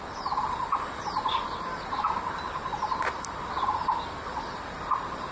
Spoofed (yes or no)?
no